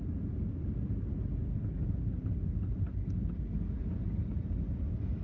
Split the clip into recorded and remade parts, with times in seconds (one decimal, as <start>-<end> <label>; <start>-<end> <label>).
0.0-5.2 recorded

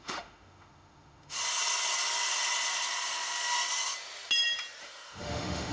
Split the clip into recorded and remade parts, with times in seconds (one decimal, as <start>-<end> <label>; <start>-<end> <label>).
0.0-1.4 remade; 1.4-4.8 recorded; 4.8-5.7 remade

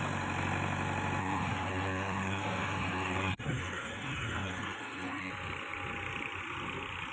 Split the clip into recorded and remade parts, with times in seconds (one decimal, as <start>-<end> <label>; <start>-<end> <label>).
0.0-1.2 recorded; 1.2-5.3 remade; 5.3-7.1 recorded